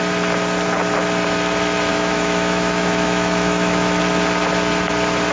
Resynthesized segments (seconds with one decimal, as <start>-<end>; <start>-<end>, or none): 1.9-4.0